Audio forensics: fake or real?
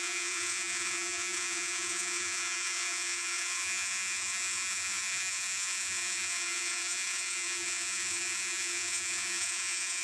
fake